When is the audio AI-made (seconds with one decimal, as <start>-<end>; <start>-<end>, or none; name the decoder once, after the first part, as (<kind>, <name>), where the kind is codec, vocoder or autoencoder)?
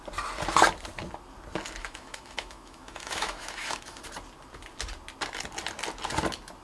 1.8-4.0 (autoencoder, DAC-VAE)